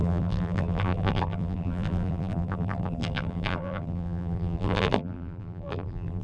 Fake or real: fake